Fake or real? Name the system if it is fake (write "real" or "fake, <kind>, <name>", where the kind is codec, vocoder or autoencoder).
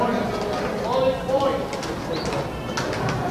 real